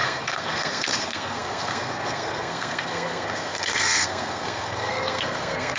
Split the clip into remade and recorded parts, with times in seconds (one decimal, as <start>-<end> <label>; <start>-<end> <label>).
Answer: 0.0-5.8 remade